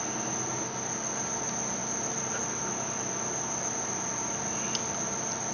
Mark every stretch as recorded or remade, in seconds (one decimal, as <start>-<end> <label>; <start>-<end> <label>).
0.0-5.5 recorded